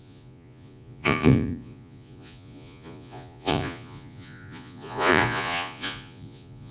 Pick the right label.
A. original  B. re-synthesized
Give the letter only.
B